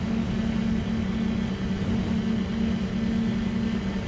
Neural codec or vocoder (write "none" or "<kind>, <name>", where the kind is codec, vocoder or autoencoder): none